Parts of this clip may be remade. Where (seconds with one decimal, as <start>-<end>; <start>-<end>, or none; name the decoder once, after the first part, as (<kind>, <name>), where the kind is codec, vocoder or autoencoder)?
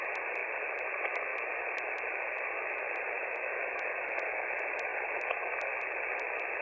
0.4-0.9 (vocoder, BigVGAN v2)